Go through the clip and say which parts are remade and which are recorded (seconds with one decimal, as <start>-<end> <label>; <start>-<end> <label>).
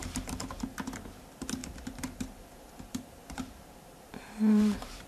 0.0-0.7 remade; 0.7-1.6 recorded; 1.6-5.1 remade